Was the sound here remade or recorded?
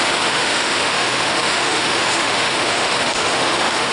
remade